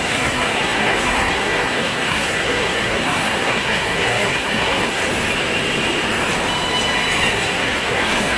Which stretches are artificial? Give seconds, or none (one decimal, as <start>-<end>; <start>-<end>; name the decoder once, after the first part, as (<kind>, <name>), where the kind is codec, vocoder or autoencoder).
0.0-5.0 (codec, SNAC); 7.3-8.4